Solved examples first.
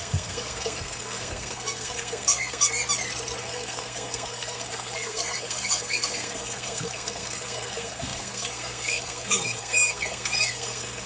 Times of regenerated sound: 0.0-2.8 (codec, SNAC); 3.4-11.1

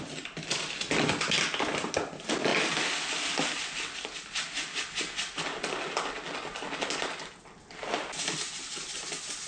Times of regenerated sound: none

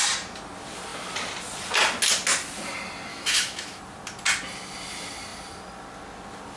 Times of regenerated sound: 3.1-3.8 (autoencoder, DAC-VAE)

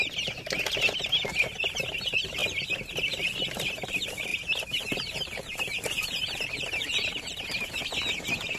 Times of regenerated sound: 4.3-7.8 (vocoder, BigVGAN v2)

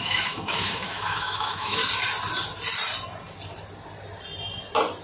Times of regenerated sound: 0.0-1.8 (autoencoder, DAC-VAE)

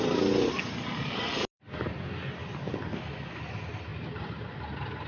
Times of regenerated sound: 2.9-3.4 (autoencoder, DAC-VAE)

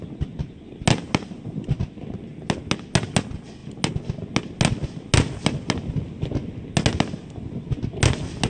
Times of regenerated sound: none